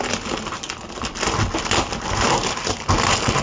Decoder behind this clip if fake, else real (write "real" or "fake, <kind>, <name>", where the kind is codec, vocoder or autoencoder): real